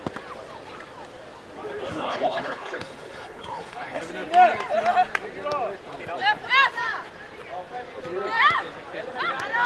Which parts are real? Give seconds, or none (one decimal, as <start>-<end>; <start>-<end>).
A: 0.0-1.9; 4.0-9.7